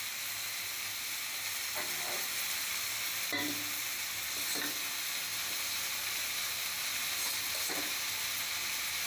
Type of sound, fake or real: real